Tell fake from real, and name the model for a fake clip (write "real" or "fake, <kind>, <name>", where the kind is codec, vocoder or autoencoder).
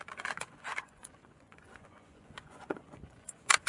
fake, vocoder, Vocos